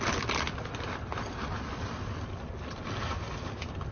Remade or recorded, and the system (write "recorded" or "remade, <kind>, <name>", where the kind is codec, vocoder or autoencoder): recorded